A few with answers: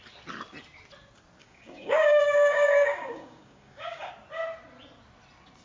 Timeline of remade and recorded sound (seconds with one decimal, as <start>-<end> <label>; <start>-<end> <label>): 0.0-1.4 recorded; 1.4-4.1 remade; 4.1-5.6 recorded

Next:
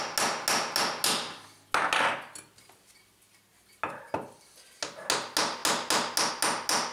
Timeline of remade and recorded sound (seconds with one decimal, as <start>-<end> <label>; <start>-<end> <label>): 0.0-6.9 recorded

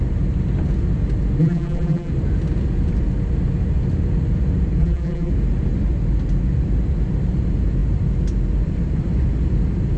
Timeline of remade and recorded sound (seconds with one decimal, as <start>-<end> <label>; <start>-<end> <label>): 0.0-1.4 recorded; 1.4-2.1 remade; 2.1-4.8 recorded; 4.8-5.3 remade; 5.3-10.0 recorded